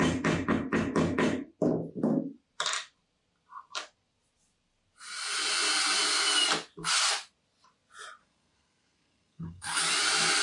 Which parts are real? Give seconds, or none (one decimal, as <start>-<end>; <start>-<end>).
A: 0.0-8.2; 9.8-10.4